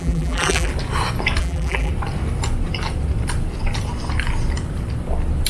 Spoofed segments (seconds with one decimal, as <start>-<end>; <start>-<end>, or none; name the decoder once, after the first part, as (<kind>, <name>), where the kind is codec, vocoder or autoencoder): 0.0-0.7 (vocoder, BigVGAN v2); 1.4-1.9